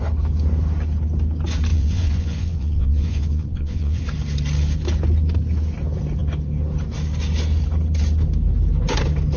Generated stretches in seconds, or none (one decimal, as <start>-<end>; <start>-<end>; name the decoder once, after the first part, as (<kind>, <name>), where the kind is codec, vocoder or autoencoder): 1.7-4.0 (vocoder, Vocos)